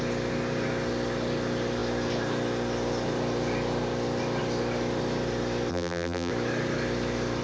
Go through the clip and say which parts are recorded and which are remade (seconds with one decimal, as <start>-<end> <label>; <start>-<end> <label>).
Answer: 0.0-5.7 recorded; 5.7-6.3 remade; 6.3-7.4 recorded